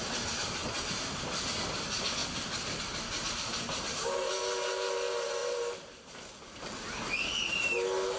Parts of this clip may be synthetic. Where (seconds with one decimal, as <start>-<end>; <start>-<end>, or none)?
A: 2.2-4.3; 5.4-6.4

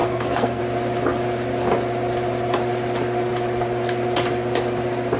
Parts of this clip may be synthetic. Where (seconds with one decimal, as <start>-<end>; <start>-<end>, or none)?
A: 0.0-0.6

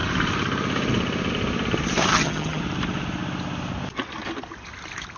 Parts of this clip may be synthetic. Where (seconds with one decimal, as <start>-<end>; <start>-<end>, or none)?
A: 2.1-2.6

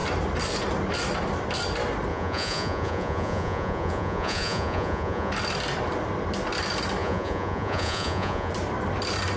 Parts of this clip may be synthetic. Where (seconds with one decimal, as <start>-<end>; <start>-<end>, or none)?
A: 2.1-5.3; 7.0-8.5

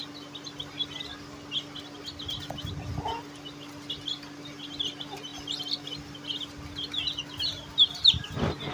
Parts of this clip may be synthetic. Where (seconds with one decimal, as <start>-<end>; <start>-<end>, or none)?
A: none